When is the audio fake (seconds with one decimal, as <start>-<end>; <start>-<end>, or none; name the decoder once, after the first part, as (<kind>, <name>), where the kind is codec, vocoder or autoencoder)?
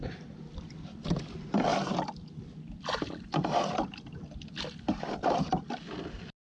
none